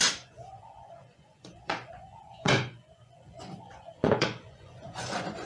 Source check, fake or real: fake